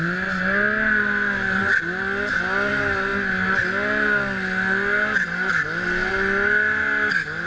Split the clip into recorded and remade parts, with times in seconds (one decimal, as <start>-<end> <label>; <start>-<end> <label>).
0.0-7.5 recorded